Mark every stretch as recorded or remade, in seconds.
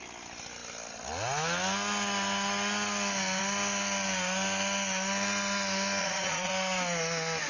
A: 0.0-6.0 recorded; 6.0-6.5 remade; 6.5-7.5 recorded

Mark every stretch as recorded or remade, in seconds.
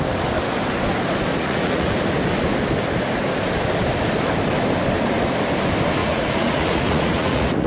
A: 0.0-1.3 recorded; 1.3-1.9 remade; 1.9-6.0 recorded; 6.0-7.7 remade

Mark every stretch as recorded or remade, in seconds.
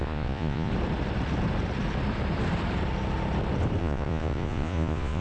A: 0.0-0.7 remade; 0.7-3.8 recorded; 3.8-5.2 remade